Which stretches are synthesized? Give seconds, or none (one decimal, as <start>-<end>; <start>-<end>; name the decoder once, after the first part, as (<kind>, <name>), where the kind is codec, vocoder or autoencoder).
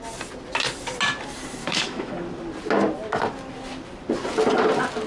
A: 1.6-2.1 (autoencoder, DAC-VAE)